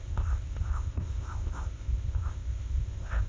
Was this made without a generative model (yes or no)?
no